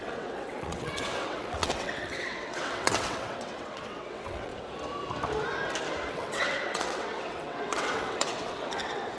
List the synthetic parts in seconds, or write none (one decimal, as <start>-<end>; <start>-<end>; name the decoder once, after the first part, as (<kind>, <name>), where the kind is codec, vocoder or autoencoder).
0.0-4.5 (vocoder, WaveNeXt); 6.1-9.2